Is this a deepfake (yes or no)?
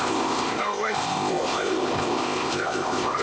yes